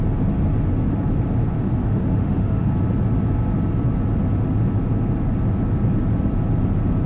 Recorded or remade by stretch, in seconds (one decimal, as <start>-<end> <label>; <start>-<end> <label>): 0.0-1.8 recorded; 1.8-2.7 remade; 2.7-7.1 recorded